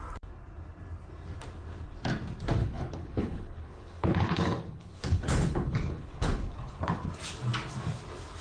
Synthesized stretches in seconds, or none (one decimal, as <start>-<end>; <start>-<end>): 2.6-7.1